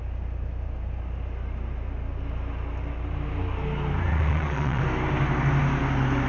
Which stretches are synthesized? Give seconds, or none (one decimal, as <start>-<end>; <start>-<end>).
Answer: 4.1-4.8